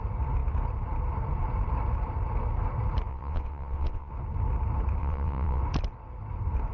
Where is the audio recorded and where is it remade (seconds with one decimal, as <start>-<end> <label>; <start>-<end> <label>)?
0.0-3.1 recorded; 3.1-4.1 remade; 4.1-5.0 recorded; 5.0-5.6 remade; 5.6-6.7 recorded